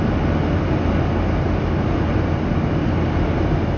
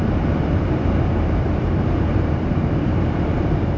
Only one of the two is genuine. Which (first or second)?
first